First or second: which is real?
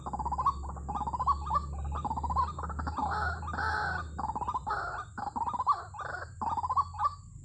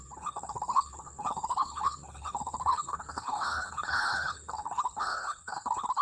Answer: first